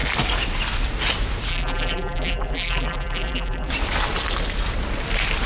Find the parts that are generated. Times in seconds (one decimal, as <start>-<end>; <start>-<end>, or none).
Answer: 1.5-3.7